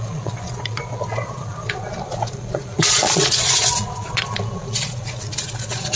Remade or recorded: remade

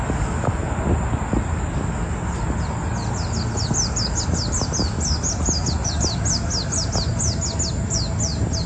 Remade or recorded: recorded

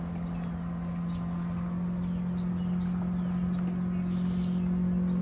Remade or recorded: recorded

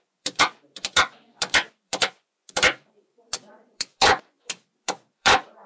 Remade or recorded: remade